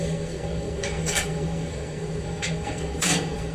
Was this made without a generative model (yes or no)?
no